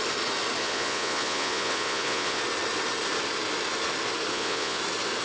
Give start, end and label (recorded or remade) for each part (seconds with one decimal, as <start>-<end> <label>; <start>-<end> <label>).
0.0-0.6 recorded; 0.6-2.4 remade; 2.4-4.3 recorded; 4.3-4.8 remade; 4.8-5.2 recorded